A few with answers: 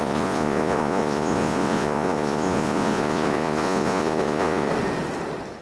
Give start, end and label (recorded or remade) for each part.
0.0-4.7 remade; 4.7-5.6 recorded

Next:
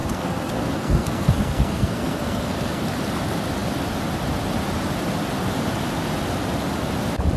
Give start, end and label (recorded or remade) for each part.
0.0-2.8 remade; 2.8-7.4 recorded

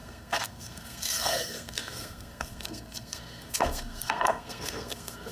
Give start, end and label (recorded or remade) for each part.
0.0-5.3 remade

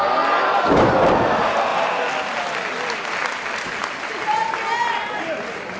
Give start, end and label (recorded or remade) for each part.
0.0-5.8 recorded

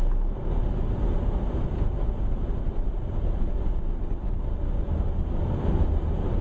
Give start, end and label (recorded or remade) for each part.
0.0-6.4 recorded

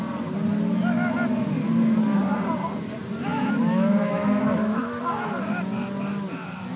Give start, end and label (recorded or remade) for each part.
0.0-3.3 recorded; 3.3-5.0 remade; 5.0-6.8 recorded